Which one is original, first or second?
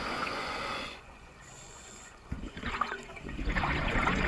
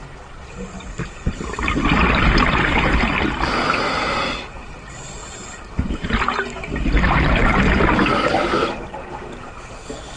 second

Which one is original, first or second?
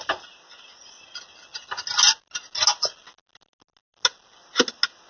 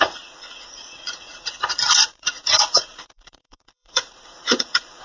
first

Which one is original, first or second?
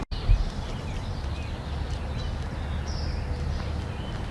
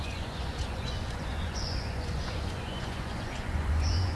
first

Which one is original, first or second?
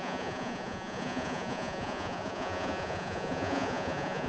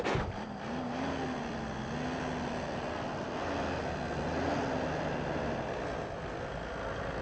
second